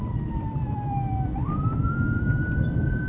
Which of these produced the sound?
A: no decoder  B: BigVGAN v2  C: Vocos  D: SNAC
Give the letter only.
B